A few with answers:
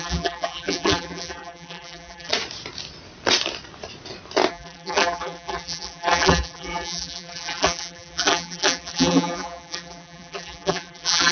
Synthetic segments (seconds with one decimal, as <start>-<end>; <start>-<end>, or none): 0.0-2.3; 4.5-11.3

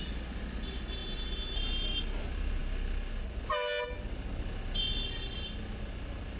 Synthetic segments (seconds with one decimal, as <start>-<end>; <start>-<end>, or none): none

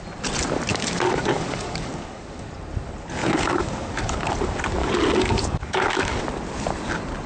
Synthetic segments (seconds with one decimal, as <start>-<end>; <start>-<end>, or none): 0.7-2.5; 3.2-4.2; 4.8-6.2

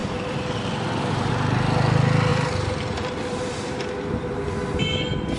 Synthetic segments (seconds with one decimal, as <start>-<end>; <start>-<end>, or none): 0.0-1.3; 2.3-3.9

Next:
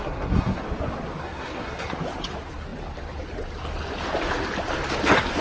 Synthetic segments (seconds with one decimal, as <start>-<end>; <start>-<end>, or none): 0.0-0.6; 1.2-1.9